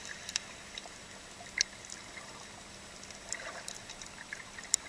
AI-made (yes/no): no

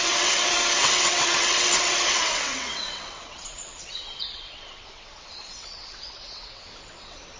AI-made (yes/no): yes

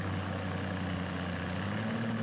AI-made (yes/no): no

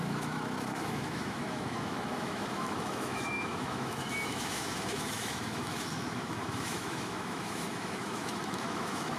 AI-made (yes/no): yes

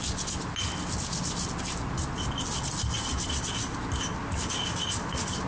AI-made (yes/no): no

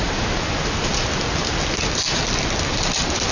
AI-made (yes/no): no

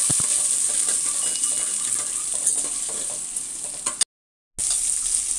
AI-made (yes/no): no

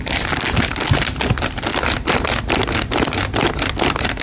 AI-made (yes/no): no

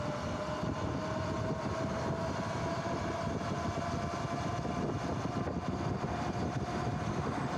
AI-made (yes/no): no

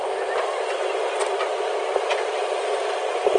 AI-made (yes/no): no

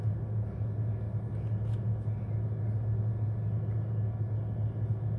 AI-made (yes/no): no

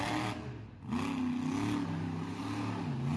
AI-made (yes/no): no